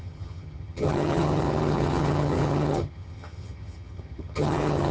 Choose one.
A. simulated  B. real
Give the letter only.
A